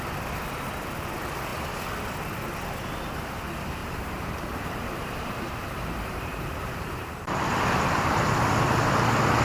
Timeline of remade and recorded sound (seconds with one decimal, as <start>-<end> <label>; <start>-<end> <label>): 0.0-3.8 recorded; 3.8-8.6 remade; 8.6-9.4 recorded